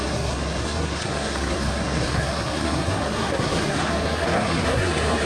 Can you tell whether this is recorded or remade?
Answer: remade